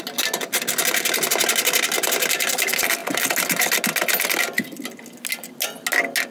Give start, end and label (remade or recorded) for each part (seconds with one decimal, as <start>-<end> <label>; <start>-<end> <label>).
0.0-6.3 recorded